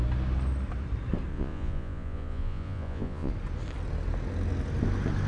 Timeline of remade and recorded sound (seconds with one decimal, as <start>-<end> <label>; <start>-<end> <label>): 0.0-1.3 recorded; 1.3-3.3 remade; 3.3-5.3 recorded